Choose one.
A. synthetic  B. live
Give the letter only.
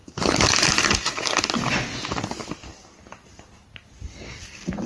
B